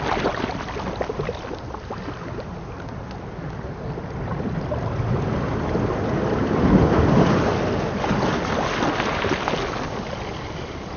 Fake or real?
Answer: real